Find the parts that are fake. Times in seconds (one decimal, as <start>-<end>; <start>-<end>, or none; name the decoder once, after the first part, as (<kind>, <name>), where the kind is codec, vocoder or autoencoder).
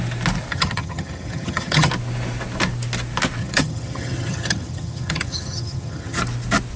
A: 0.5-1.9 (vocoder, HiFi-GAN); 3.4-6.2